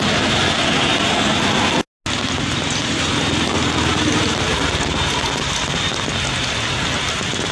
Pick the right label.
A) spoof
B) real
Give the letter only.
B